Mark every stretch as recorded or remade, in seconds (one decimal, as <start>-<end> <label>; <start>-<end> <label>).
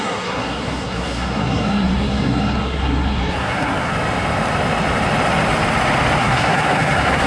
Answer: 0.0-3.9 remade; 3.9-6.2 recorded; 6.2-7.3 remade